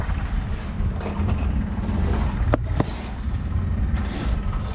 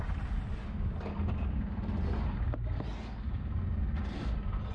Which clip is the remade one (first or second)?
first